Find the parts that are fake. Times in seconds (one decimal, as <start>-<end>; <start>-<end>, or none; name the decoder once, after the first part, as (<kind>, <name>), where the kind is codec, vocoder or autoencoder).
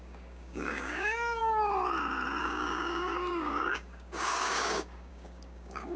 0.0-1.4 (codec, DAC); 2.4-6.0